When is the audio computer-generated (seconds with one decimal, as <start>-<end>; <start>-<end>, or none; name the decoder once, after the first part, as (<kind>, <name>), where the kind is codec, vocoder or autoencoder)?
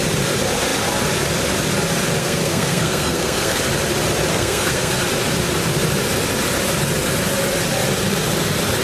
2.2-3.6 (codec, SNAC); 4.3-4.9